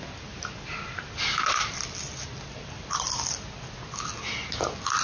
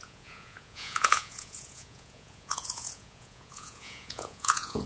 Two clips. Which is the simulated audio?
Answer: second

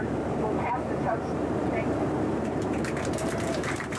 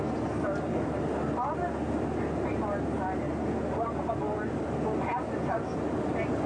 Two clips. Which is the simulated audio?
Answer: first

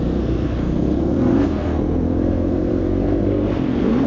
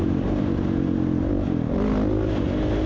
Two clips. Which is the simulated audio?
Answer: first